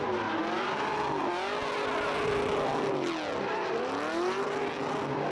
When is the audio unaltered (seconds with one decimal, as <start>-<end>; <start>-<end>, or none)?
0.0-5.3